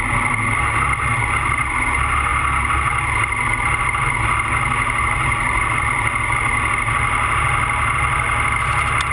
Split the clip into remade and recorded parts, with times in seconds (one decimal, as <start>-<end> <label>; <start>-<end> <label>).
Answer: 0.0-9.1 recorded